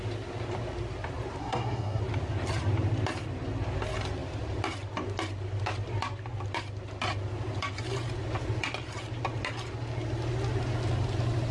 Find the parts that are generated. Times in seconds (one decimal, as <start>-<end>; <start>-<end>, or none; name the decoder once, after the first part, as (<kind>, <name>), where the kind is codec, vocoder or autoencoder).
1.4-2.0 (codec, SNAC)